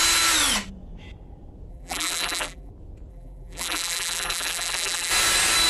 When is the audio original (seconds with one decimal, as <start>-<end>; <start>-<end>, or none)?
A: 0.0-1.7; 2.7-3.1; 5.1-5.7